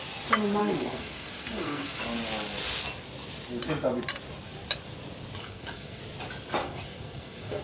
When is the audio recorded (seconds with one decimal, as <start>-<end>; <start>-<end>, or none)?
0.0-0.6; 2.0-5.4; 6.0-6.6